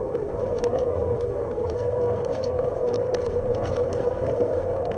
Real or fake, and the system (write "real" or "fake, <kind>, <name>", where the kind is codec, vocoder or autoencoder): fake, codec, SNAC